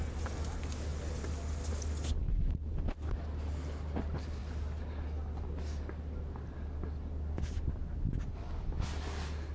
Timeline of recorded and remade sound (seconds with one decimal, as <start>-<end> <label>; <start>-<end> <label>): 0.0-9.5 recorded